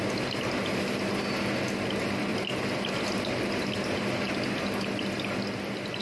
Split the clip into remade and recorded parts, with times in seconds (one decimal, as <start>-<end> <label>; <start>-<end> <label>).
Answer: 0.0-6.0 recorded